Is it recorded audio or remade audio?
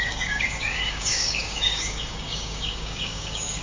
remade